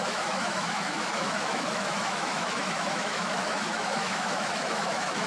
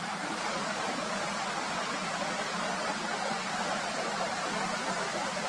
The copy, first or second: first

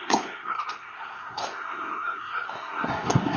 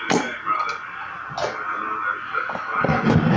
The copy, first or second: first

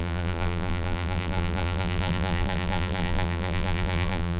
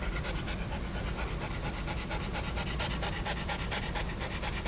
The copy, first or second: first